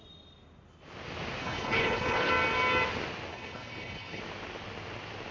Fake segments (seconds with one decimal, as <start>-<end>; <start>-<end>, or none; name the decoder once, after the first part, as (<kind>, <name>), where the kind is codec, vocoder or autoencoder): 1.4-2.3 (codec, HILCodec); 3.3-4.2